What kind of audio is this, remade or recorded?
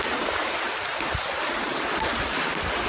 recorded